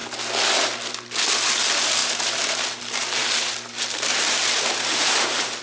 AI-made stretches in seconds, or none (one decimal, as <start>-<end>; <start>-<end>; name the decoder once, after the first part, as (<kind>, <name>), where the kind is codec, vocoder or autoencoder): 2.0-2.8 (vocoder, BigVGAN v2); 3.2-5.6